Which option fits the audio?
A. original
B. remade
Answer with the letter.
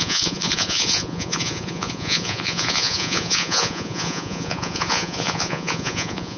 B